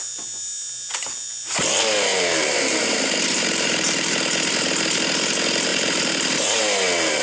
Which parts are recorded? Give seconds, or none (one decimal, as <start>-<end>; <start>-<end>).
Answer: 0.0-2.1; 4.1-5.7; 6.6-7.2